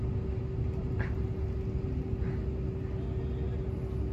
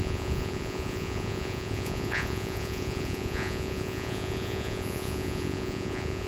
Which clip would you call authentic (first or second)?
first